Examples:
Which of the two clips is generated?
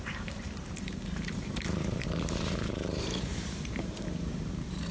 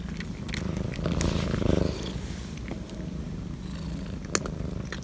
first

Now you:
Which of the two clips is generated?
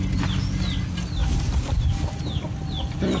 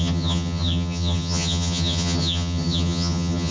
second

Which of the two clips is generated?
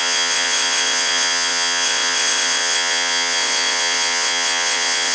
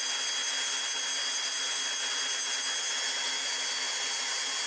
first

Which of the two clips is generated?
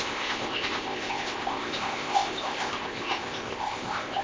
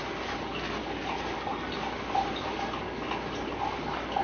first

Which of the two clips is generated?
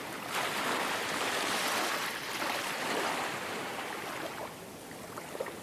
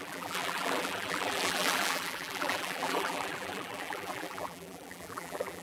second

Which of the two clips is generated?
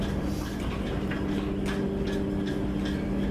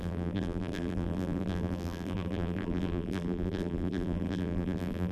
second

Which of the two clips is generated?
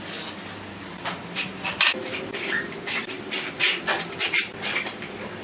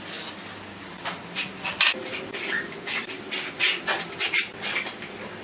first